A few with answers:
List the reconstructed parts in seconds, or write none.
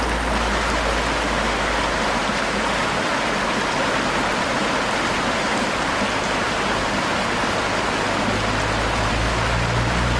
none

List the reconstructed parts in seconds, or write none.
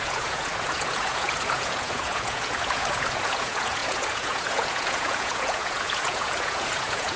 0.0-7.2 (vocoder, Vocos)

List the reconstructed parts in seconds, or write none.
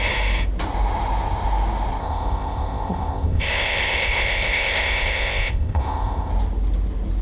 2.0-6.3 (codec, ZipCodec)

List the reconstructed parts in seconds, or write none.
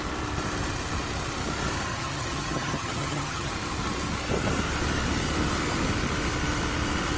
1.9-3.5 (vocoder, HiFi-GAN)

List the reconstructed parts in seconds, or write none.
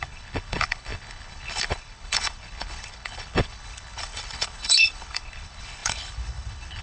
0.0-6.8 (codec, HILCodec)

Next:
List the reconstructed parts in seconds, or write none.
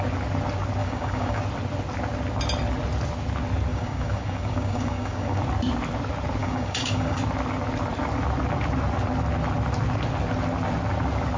0.8-1.4 (codec, DAC); 3.7-5.4; 6.4-7.2